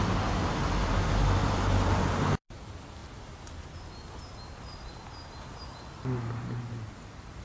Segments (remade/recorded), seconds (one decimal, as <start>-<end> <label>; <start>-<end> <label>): 0.0-1.4 recorded; 1.4-2.6 remade; 2.6-7.4 recorded